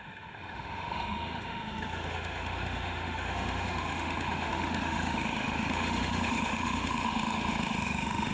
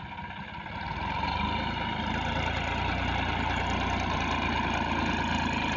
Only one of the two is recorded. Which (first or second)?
second